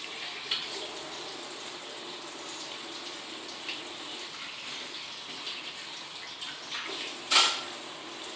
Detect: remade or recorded recorded